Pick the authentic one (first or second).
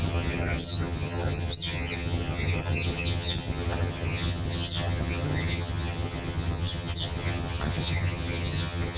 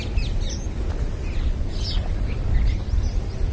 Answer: second